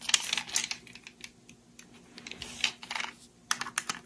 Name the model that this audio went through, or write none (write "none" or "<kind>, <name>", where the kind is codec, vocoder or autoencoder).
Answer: none